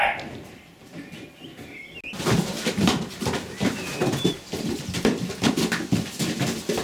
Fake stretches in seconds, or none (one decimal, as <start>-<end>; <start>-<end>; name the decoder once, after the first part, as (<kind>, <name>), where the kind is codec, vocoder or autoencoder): none